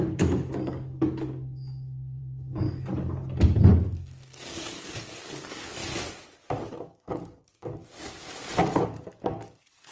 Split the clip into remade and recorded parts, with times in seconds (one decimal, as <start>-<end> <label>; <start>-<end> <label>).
0.0-5.8 remade; 5.8-6.7 recorded; 6.7-7.8 remade; 7.8-8.6 recorded; 8.6-9.9 remade